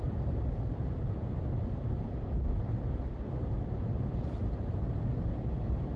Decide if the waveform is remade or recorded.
recorded